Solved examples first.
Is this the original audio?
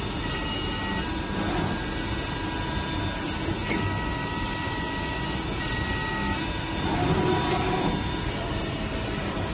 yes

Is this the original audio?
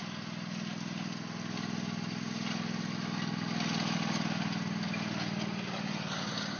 yes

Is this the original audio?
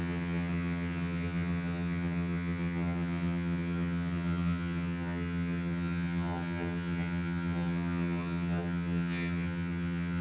no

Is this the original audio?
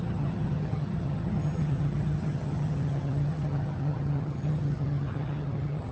no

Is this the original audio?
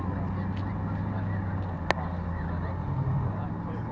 yes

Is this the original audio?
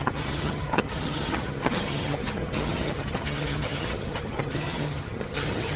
no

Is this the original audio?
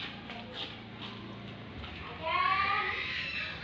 yes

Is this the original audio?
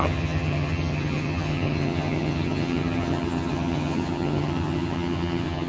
no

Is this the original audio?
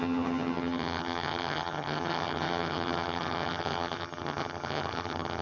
no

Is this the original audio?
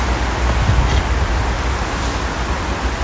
yes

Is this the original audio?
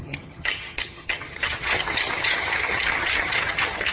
no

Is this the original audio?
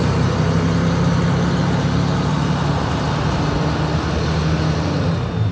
yes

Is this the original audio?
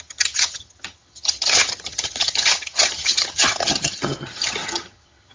no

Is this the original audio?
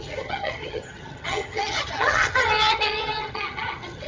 no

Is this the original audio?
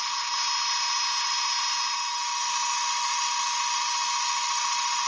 yes